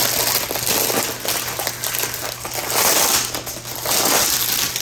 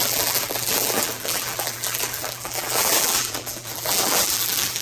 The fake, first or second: second